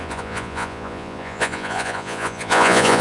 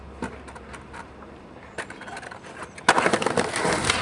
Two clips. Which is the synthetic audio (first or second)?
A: first